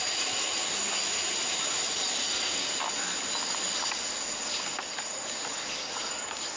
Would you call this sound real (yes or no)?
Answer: yes